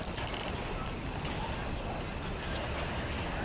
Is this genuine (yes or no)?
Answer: yes